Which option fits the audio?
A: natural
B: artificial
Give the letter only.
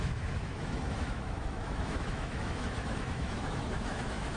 B